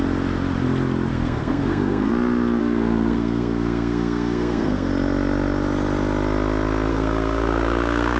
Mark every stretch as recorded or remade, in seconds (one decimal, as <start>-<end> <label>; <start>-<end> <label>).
0.0-1.1 recorded; 1.1-2.1 remade; 2.1-2.6 recorded; 2.6-4.9 remade; 4.9-6.9 recorded; 6.9-8.2 remade